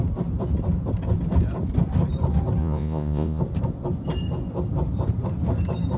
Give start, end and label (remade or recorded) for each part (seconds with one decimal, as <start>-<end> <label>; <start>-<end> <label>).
0.0-2.6 recorded; 2.6-3.4 remade; 3.4-6.0 recorded